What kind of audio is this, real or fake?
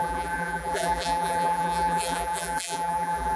fake